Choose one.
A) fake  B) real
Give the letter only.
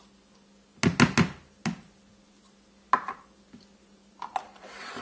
B